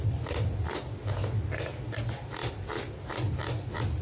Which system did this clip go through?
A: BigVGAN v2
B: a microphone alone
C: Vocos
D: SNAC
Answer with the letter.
B